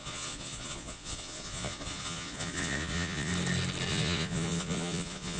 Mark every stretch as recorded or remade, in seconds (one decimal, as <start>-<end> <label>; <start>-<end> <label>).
0.0-3.3 remade; 3.3-3.9 recorded; 3.9-5.4 remade